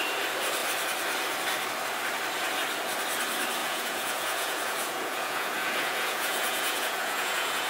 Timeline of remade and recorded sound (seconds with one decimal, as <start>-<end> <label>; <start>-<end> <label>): 0.0-3.6 recorded; 3.6-7.7 remade